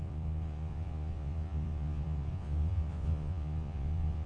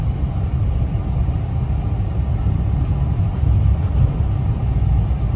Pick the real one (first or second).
second